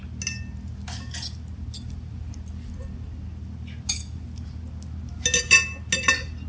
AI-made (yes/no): no